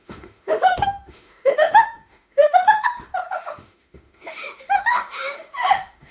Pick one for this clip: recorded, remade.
remade